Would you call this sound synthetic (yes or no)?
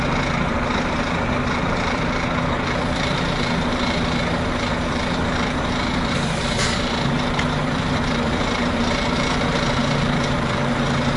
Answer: yes